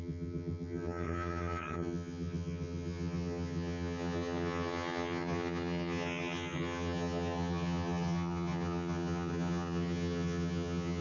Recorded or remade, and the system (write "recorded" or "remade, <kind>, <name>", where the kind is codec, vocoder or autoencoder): remade, vocoder, HiFi-GAN